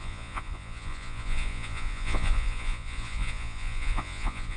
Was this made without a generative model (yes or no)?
no